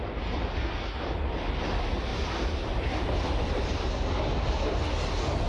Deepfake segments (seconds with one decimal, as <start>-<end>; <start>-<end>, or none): 2.1-3.9